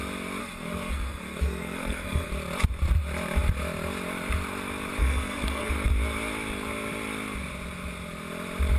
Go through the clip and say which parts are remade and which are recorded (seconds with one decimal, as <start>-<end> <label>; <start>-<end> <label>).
0.0-0.4 recorded; 0.4-2.3 remade; 2.3-5.0 recorded; 5.0-5.7 remade; 5.7-8.8 recorded